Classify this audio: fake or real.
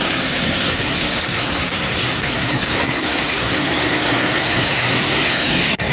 fake